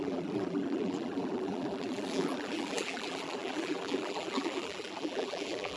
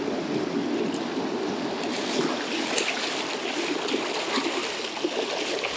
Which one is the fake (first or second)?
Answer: first